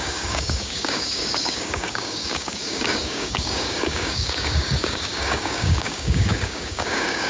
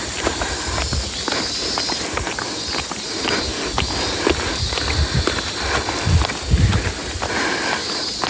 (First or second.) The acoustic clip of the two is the second